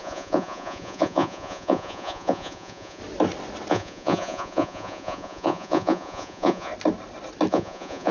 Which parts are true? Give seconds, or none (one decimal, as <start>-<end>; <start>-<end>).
3.0-3.7; 6.7-7.5